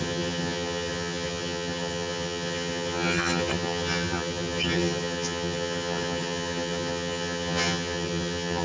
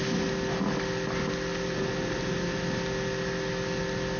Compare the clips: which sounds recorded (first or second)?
second